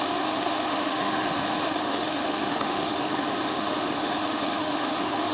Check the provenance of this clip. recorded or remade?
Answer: remade